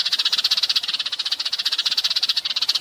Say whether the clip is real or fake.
fake